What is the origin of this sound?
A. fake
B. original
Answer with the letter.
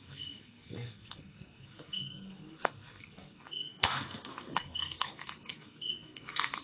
A